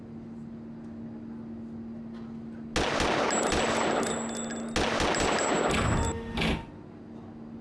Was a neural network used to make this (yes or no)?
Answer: no